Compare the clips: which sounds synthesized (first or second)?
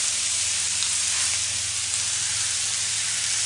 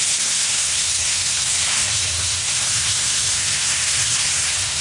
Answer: second